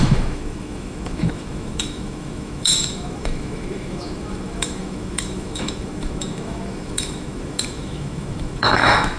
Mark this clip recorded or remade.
remade